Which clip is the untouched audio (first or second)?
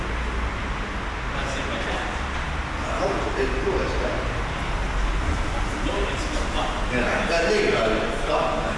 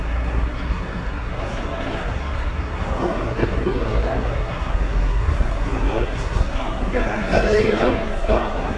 first